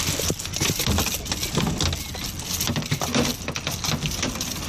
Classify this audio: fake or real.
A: real